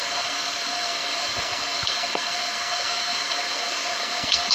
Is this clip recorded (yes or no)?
no